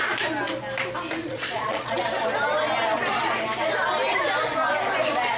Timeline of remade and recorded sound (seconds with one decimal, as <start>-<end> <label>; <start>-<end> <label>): 0.0-1.2 recorded; 1.2-2.0 remade; 2.0-5.4 recorded